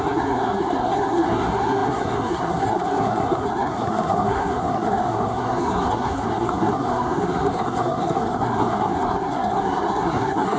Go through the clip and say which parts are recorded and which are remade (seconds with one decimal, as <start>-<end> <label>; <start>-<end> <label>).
0.0-10.6 remade